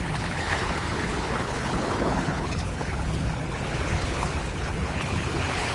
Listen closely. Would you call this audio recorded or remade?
remade